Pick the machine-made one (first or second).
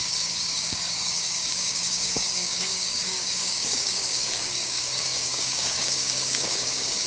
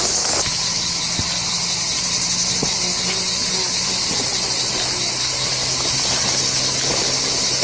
first